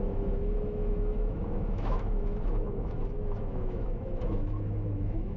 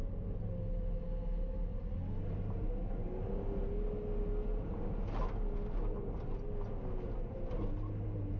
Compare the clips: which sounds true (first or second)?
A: second